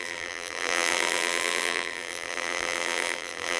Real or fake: fake